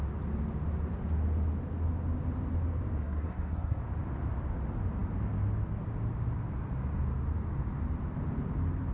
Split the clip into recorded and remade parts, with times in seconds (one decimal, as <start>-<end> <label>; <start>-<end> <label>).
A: 0.0-3.0 recorded; 3.0-3.8 remade; 3.8-8.9 recorded